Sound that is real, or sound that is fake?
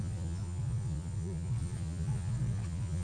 fake